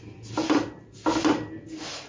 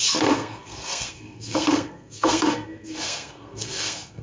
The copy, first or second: second